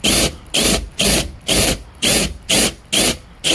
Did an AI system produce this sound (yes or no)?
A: no